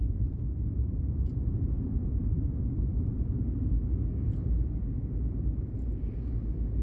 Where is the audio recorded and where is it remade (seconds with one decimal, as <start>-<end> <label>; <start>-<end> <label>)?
0.0-4.0 remade; 4.0-5.6 recorded; 5.6-6.8 remade